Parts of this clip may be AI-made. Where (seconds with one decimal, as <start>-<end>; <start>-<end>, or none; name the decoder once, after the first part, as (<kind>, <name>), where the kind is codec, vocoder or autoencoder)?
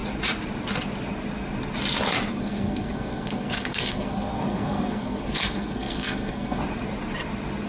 2.3-6.6 (codec, SNAC)